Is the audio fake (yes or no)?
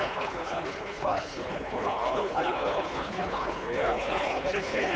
yes